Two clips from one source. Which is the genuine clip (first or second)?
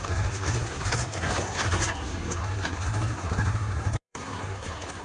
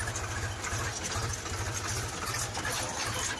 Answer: second